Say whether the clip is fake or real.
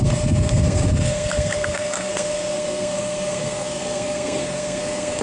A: fake